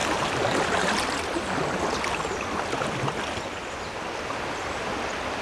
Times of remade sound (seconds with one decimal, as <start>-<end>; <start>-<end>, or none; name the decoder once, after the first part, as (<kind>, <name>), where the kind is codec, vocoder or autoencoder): none